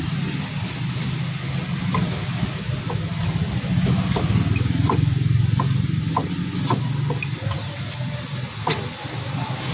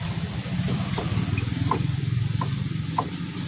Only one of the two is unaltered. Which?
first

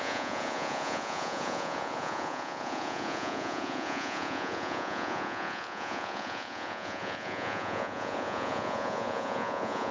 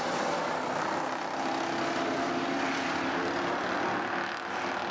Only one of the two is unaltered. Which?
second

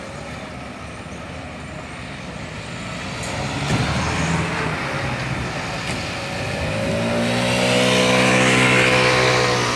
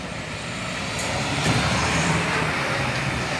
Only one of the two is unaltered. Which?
first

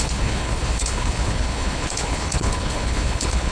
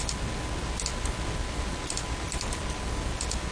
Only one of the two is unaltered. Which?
second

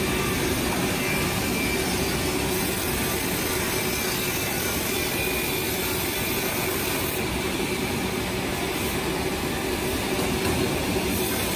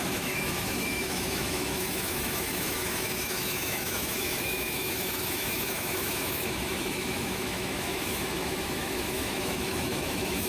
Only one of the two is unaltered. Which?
first